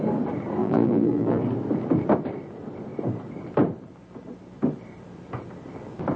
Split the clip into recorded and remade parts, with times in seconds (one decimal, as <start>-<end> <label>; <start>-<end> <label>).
0.0-0.6 recorded; 0.6-1.4 remade; 1.4-6.2 recorded